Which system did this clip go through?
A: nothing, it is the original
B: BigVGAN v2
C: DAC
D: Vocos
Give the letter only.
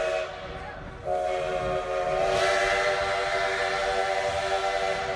A